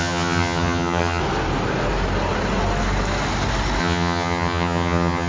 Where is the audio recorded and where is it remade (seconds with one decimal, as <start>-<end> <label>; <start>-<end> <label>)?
0.0-1.2 remade; 1.2-3.8 recorded; 3.8-5.3 remade

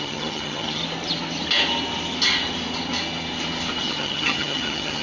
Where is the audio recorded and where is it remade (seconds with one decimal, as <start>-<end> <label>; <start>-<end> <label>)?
0.0-0.8 remade; 0.8-3.8 recorded; 3.8-5.0 remade

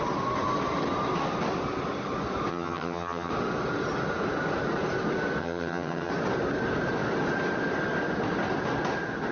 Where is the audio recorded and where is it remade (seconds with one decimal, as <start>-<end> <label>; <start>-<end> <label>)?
0.0-2.5 recorded; 2.5-3.3 remade; 3.3-5.4 recorded; 5.4-6.1 remade; 6.1-9.3 recorded

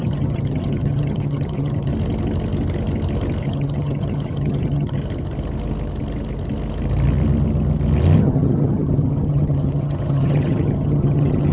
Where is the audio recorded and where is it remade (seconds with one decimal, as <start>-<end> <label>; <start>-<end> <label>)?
0.0-1.9 remade; 1.9-3.4 recorded; 3.4-5.0 remade; 5.0-8.2 recorded; 8.2-11.5 remade

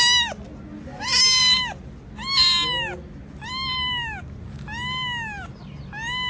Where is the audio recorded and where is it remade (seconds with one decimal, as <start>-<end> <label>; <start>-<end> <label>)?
0.0-6.3 recorded

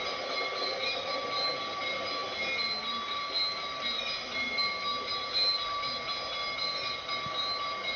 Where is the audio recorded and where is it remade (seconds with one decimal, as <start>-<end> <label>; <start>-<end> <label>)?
0.0-8.0 recorded

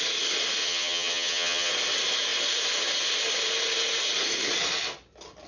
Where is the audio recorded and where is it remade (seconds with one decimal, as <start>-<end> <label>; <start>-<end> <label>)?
0.0-0.6 recorded; 0.6-1.7 remade; 1.7-5.5 recorded